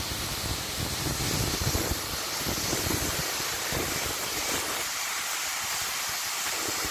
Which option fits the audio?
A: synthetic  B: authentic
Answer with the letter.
B